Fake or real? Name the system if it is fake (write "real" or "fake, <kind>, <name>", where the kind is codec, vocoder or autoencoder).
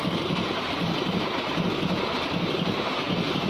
fake, vocoder, BigVGAN v2